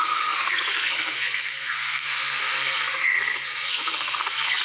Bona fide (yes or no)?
no